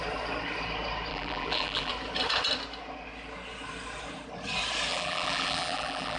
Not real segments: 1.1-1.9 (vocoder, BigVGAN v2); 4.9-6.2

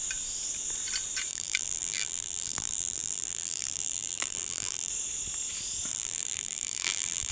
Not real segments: 1.3-4.9 (vocoder, BigVGAN v2); 5.9-7.3